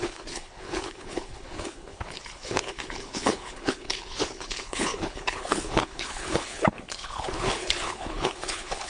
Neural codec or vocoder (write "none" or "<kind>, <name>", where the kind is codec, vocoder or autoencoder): codec, HILCodec